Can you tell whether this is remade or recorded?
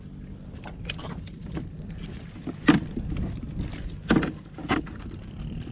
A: recorded